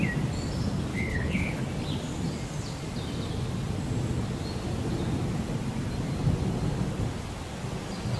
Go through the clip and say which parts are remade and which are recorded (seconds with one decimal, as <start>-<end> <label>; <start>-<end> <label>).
0.0-0.9 recorded; 0.9-1.6 remade; 1.6-8.2 recorded